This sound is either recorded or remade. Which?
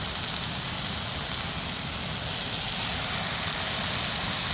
recorded